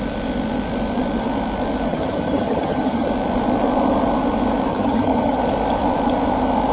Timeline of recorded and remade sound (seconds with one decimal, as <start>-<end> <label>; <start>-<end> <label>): 0.0-1.9 recorded; 1.9-3.1 remade; 3.1-4.7 recorded; 4.7-5.4 remade; 5.4-6.7 recorded